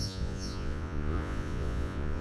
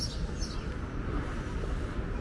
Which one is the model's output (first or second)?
first